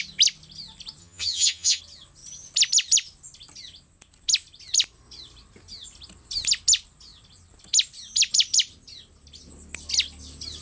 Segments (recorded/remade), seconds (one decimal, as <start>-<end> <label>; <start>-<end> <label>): 0.0-1.0 recorded; 1.0-1.8 remade; 1.8-10.6 recorded

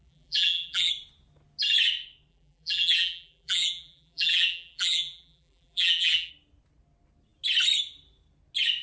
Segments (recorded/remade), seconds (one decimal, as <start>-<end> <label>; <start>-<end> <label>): 0.0-0.9 remade; 0.9-2.3 recorded; 2.3-6.3 remade; 6.3-8.8 recorded